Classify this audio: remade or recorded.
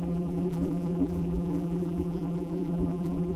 remade